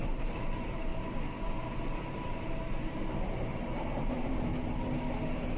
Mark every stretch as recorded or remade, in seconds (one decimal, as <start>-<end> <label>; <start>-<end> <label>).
0.0-0.9 remade; 0.9-3.7 recorded; 3.7-4.5 remade; 4.5-5.6 recorded